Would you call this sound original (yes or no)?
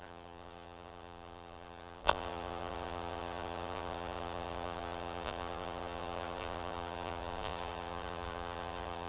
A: no